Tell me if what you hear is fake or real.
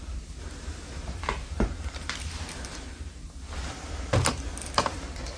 fake